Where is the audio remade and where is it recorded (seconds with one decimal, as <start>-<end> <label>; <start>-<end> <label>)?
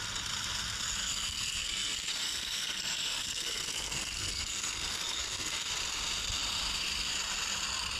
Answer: 0.0-1.0 recorded; 1.0-5.7 remade; 5.7-8.0 recorded